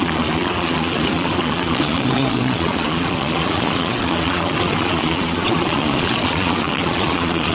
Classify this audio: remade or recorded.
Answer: remade